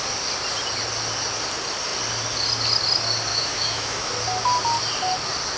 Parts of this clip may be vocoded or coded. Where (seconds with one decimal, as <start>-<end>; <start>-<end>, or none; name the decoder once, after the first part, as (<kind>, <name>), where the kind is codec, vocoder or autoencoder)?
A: 3.3-4.1 (autoencoder, DAC-VAE)